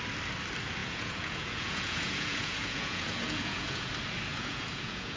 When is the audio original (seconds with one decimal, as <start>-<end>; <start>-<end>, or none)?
0.0-0.8; 3.9-4.3